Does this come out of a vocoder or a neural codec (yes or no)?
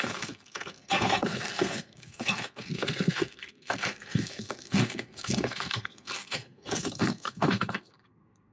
yes